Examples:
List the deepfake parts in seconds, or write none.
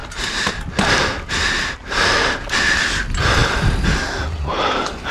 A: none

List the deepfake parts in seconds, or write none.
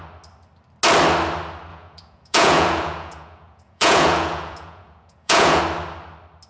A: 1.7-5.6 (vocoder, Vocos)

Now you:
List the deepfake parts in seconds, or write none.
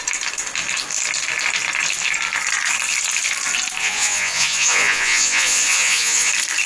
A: 3.8-6.3 (vocoder, Vocos)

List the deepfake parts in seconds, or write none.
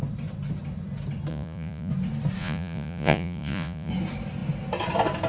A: 1.3-1.9 (vocoder, Vocos); 2.4-3.9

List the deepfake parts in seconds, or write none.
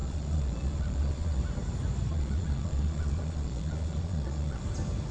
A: 0.0-1.4 (vocoder, Vocos); 2.1-4.6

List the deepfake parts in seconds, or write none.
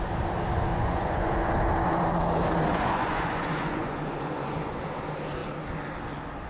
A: 0.7-1.5 (vocoder, Vocos); 2.7-4.8